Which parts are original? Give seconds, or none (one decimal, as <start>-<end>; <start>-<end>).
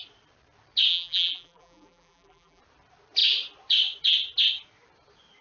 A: 0.0-0.9; 2.6-5.4